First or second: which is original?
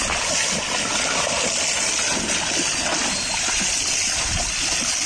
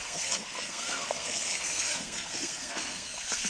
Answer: first